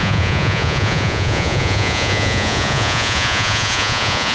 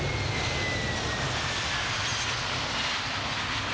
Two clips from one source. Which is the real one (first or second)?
second